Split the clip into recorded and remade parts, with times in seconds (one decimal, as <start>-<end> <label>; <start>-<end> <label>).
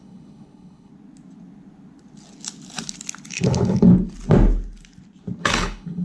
0.0-0.9 remade; 0.9-3.3 recorded; 3.3-3.9 remade; 3.9-5.4 recorded; 5.4-6.0 remade